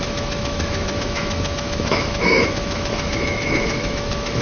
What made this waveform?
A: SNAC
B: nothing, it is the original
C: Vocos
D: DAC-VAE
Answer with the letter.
D